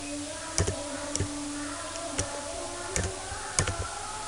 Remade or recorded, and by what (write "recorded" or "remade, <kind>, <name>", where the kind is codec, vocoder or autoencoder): recorded